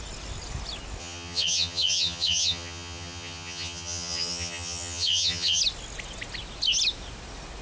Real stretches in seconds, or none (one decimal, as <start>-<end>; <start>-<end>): 0.0-1.0; 5.6-7.6